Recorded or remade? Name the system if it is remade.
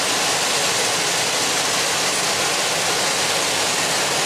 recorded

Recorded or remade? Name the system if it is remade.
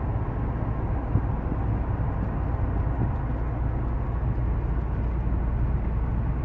recorded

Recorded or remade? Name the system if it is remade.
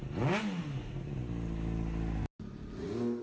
recorded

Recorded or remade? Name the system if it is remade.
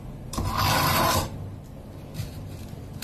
recorded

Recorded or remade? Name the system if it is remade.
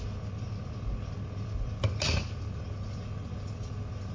recorded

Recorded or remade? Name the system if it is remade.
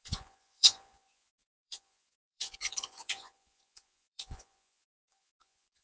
remade, vocoder, Vocos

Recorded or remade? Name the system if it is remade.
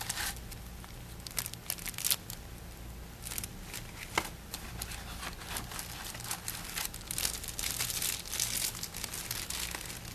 recorded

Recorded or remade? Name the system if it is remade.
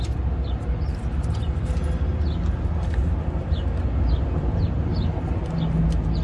recorded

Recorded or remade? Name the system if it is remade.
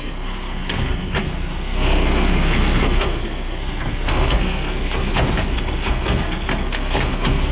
remade, codec, SNAC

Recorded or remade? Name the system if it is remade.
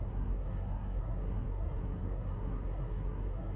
remade, codec, SNAC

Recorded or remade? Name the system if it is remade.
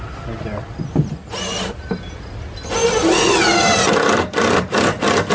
recorded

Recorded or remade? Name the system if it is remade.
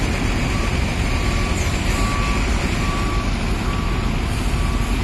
recorded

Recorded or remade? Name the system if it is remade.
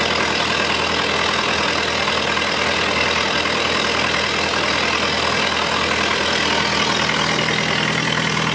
recorded